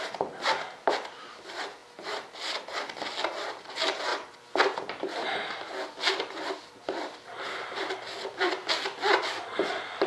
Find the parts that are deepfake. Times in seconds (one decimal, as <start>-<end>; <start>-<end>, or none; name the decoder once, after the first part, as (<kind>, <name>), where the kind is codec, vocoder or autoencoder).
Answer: none